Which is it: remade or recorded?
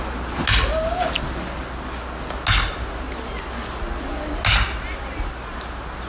recorded